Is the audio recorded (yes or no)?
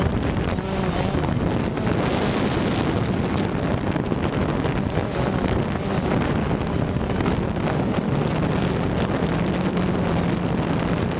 yes